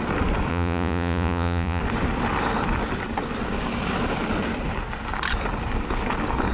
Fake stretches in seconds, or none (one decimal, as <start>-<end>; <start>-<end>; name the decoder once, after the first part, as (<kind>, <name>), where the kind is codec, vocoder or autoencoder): 0.5-1.8 (vocoder, Vocos)